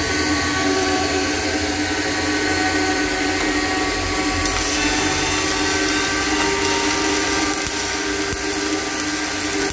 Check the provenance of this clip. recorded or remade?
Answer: recorded